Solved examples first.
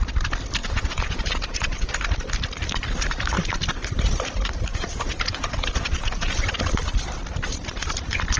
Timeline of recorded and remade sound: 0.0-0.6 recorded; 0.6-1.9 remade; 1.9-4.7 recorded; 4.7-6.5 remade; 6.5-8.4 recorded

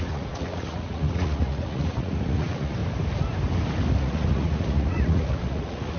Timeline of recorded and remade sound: 0.0-2.8 remade; 2.8-4.0 recorded; 4.0-6.0 remade

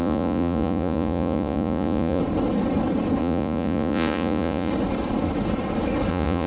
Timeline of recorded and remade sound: 0.0-2.2 remade; 2.2-3.2 recorded; 3.2-4.7 remade; 4.7-6.1 recorded; 6.1-6.5 remade

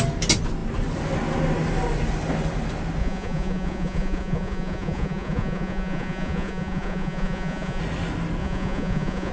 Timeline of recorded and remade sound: 0.0-3.0 recorded; 3.0-7.8 remade; 7.8-8.4 recorded; 8.4-9.3 remade

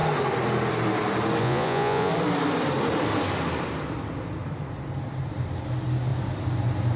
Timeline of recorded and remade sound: 0.0-1.4 recorded; 1.4-2.1 remade; 2.1-7.0 recorded

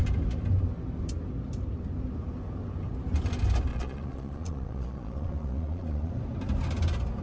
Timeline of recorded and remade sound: 0.0-3.7 recorded; 3.7-6.1 remade; 6.1-7.2 recorded